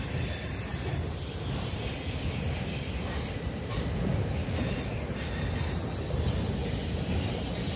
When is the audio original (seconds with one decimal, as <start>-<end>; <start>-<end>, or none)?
0.0-7.8